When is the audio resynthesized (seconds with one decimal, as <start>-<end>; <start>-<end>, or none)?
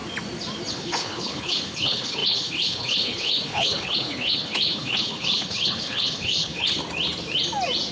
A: 0.7-6.8